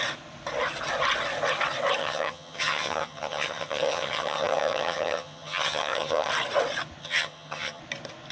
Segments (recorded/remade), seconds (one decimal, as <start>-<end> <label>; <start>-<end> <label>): 0.0-2.0 recorded; 2.0-6.3 remade; 6.3-7.0 recorded; 7.0-7.8 remade; 7.8-8.3 recorded